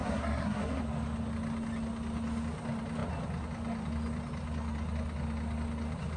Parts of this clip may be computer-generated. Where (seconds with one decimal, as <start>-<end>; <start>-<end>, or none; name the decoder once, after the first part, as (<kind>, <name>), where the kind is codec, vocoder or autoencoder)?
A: 0.0-0.8 (codec, SNAC)